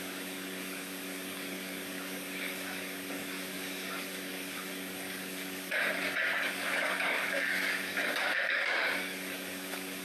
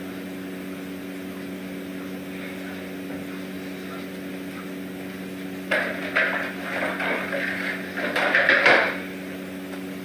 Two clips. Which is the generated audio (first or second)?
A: first